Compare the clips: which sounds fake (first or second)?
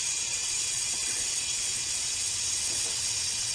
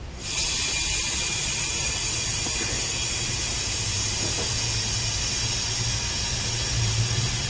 first